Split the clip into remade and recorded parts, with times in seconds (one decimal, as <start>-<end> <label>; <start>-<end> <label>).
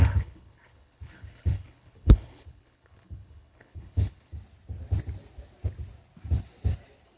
0.0-4.3 remade; 4.3-7.2 recorded